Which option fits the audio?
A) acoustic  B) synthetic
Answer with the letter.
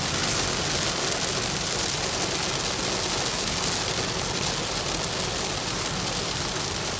A